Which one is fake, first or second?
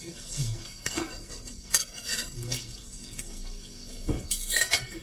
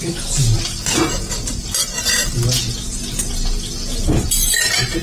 first